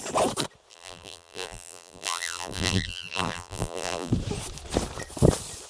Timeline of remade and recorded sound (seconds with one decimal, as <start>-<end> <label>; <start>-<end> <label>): 0.0-0.7 recorded; 0.7-4.1 remade; 4.1-5.7 recorded